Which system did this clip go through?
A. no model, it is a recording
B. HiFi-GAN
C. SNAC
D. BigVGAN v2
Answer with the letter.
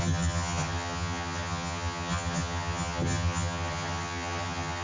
B